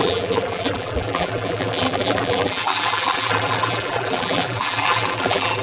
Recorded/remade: remade